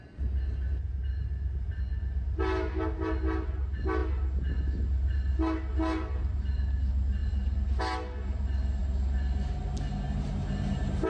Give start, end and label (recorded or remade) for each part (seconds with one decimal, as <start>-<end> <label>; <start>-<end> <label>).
0.0-11.1 recorded

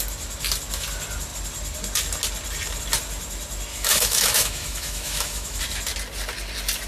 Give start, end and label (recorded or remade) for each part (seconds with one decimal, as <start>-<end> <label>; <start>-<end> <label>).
0.0-3.7 recorded; 3.7-5.6 remade; 5.6-6.9 recorded

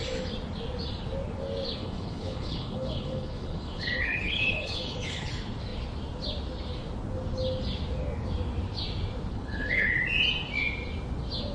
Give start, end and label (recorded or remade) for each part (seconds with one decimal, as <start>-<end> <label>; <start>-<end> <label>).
0.0-1.8 recorded; 1.8-5.3 remade; 5.3-9.3 recorded; 9.3-10.0 remade; 10.0-11.5 recorded